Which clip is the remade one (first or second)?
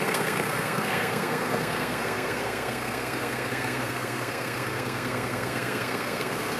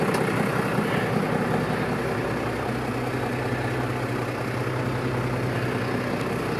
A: first